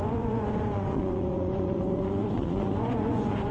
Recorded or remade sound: remade